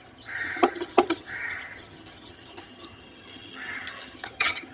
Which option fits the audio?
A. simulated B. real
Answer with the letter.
A